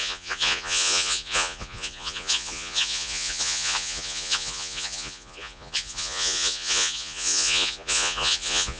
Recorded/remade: remade